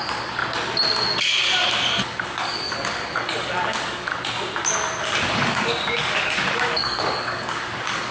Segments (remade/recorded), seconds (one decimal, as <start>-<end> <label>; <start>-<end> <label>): 0.0-0.4 remade; 0.4-1.2 recorded; 1.2-4.1 remade; 4.1-5.0 recorded; 5.0-8.1 remade